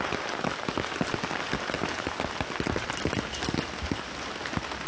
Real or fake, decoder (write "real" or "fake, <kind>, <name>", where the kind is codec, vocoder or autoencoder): real